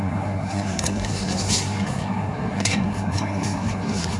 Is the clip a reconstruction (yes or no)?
yes